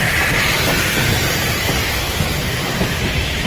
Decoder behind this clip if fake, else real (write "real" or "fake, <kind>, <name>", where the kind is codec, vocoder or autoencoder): fake, vocoder, BigVGAN v2